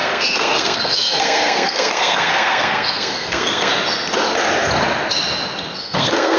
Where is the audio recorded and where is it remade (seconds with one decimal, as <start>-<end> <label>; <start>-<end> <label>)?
0.0-3.7 remade; 3.7-5.8 recorded; 5.8-6.4 remade